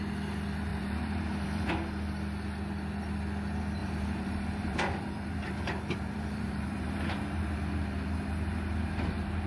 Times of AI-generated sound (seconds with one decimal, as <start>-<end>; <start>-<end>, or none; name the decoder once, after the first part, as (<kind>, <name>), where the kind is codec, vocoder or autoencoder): 0.7-1.7 (vocoder, BigVGAN v2); 3.8-7.0